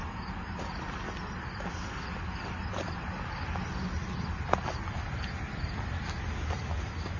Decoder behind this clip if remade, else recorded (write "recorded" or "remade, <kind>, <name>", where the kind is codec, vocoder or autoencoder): recorded